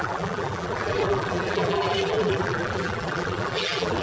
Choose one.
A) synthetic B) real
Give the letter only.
A